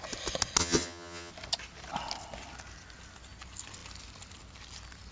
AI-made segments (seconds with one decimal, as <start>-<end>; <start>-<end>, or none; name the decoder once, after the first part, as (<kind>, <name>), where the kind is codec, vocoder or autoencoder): 0.6-1.3 (vocoder, HiFi-GAN)

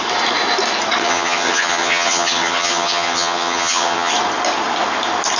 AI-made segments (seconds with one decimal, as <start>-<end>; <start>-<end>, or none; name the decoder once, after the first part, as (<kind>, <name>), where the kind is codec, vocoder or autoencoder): 1.0-4.1 (vocoder, HiFi-GAN)

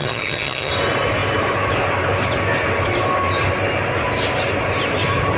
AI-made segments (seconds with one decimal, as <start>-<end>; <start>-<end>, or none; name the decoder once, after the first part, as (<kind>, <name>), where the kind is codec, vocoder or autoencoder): 0.0-0.7 (vocoder, HiFi-GAN)

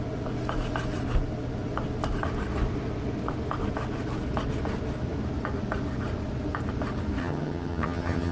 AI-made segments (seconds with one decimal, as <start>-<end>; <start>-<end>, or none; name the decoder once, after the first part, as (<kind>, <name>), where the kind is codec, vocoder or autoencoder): 7.2-8.3 (vocoder, HiFi-GAN)

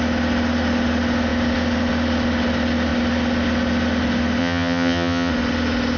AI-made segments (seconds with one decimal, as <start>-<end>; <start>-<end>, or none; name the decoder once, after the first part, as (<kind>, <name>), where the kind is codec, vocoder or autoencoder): 4.4-5.3 (vocoder, HiFi-GAN)